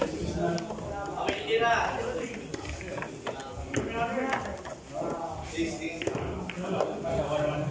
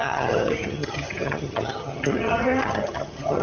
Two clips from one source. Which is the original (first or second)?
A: first